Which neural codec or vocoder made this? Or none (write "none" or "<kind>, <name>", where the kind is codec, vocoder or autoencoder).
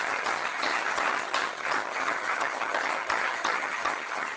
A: vocoder, HiFi-GAN